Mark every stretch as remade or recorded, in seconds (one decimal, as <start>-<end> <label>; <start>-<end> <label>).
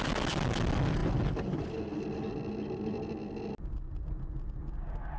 0.0-5.2 recorded